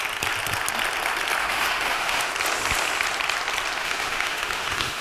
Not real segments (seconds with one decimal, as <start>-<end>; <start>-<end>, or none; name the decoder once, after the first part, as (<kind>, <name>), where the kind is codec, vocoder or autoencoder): 1.4-2.3 (autoencoder, DAC-VAE); 3.8-5.0